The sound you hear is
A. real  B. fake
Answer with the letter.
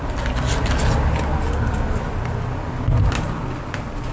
A